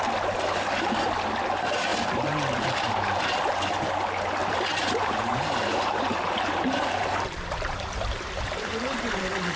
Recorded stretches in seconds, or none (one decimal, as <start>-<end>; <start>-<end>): 0.0-1.9; 3.2-4.4; 9.2-9.6